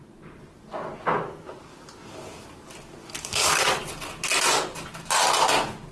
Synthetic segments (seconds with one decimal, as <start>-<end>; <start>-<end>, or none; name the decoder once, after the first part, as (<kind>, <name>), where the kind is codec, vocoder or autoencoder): 3.0-3.8 (codec, DAC)